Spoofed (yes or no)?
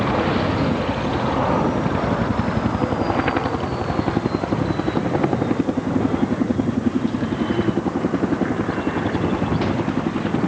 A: no